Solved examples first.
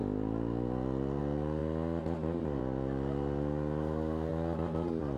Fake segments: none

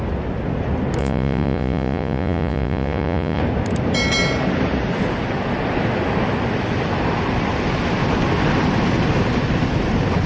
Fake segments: 1.0-3.4 (vocoder, Vocos)

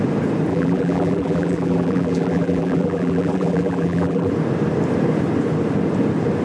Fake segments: 0.5-4.3 (vocoder, BigVGAN v2)

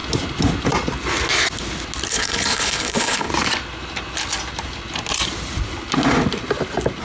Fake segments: 2.1-3.3 (codec, HILCodec)

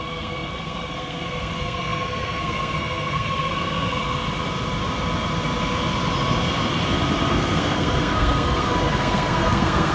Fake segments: 0.0-4.0 (codec, SNAC); 7.3-9.9

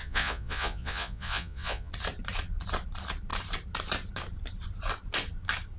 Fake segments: 0.0-1.9 (vocoder, Vocos)

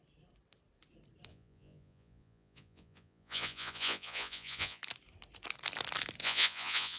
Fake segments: 1.3-4.8 (vocoder, Vocos); 6.2-7.0